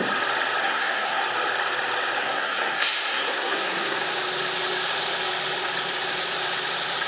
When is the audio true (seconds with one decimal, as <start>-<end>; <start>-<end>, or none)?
0.0-0.6; 1.2-2.2; 4.0-7.1